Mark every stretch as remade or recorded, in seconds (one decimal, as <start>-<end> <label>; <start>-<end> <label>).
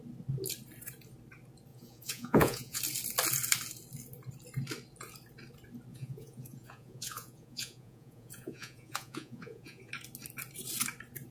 0.0-1.7 recorded; 1.7-2.8 remade; 2.8-5.9 recorded; 5.9-9.9 remade; 9.9-11.3 recorded